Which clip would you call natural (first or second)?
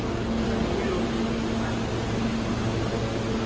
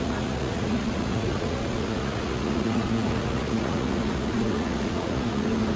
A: first